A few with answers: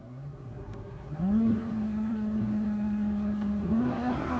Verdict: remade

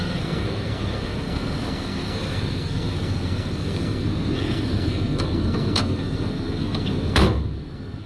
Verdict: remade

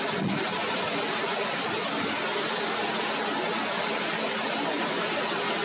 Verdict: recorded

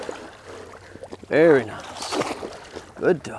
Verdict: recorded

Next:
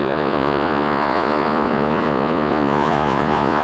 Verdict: remade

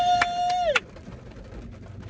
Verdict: recorded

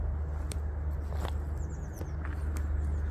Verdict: recorded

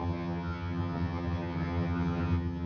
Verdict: remade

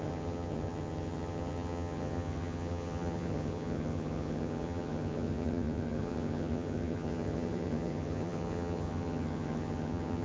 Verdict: remade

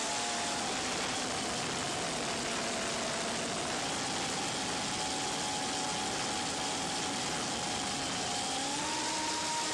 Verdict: recorded